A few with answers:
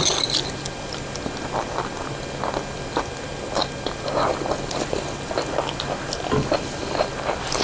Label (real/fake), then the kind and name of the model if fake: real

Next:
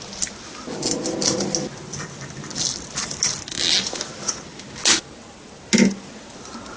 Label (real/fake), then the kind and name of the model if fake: real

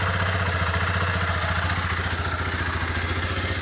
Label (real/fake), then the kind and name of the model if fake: real